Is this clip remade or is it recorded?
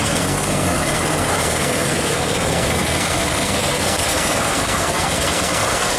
remade